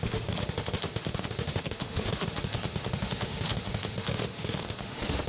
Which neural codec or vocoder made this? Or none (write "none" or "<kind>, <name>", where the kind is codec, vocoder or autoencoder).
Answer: autoencoder, DAC-VAE